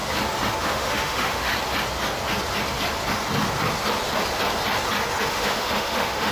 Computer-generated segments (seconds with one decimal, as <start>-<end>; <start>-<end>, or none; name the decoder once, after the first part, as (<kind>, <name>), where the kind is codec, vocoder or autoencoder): 0.6-1.5 (autoencoder, DAC-VAE); 5.3-6.3